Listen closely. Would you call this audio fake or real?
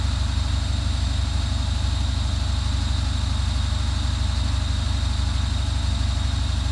real